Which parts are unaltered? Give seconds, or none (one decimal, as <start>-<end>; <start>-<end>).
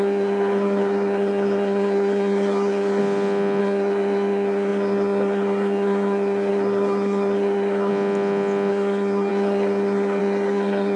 3.0-3.6; 7.9-8.7